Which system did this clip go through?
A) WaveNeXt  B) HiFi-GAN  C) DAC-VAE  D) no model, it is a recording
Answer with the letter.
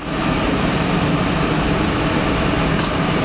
D